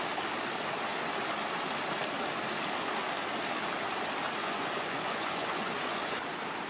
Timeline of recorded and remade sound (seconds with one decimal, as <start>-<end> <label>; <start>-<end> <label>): 0.0-4.4 recorded; 4.4-6.2 remade; 6.2-6.7 recorded